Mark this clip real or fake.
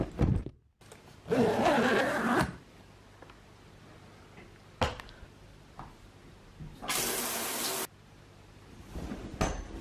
real